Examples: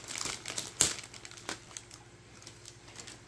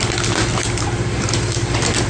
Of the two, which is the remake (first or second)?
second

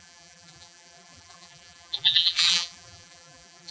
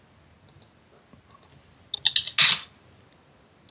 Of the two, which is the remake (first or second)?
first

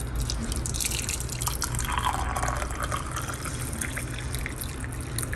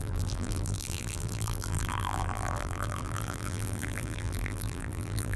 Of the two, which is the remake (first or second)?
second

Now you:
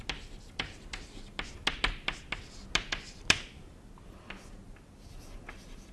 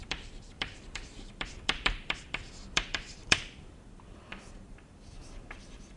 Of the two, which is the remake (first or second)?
second